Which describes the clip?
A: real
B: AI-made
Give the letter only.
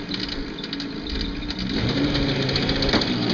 A